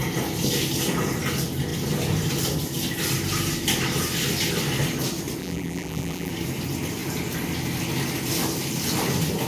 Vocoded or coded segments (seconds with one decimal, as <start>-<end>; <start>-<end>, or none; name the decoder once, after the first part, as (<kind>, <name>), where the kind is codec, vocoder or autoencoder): 5.4-6.3 (vocoder, BigVGAN v2)